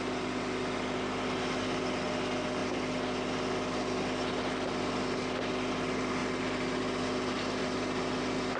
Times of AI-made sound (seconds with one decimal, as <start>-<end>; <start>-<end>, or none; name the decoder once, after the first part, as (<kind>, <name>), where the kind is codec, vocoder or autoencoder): none